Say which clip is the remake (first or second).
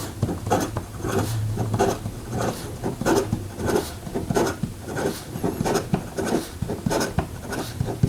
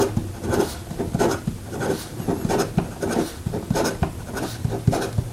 first